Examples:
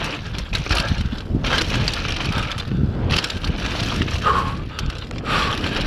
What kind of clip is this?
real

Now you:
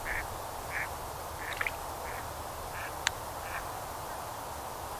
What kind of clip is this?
real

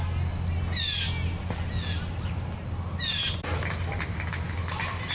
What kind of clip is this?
real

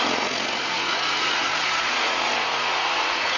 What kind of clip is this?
fake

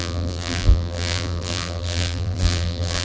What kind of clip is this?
fake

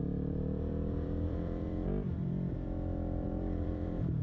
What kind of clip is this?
fake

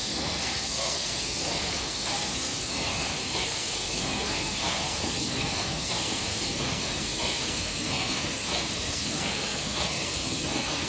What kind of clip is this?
fake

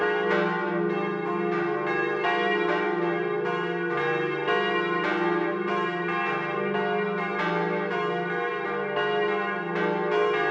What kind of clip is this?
real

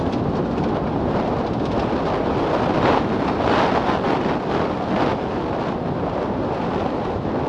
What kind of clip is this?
real